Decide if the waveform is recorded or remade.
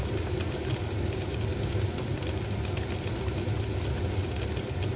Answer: recorded